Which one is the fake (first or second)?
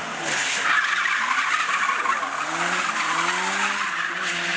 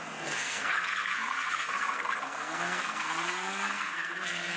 second